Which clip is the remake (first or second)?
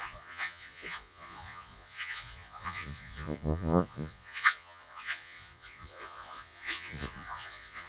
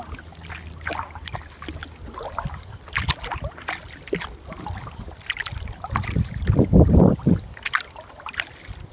first